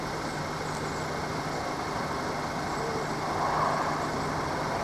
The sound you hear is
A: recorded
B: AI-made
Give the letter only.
A